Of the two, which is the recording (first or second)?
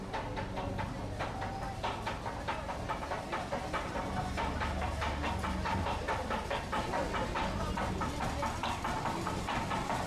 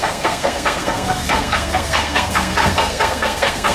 first